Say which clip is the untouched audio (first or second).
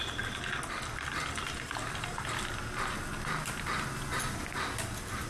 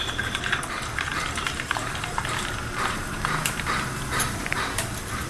first